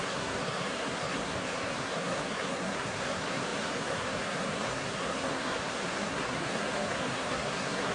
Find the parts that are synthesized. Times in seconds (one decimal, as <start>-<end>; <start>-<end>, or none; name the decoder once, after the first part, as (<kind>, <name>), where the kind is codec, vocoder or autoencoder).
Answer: 0.0-7.9 (codec, SNAC)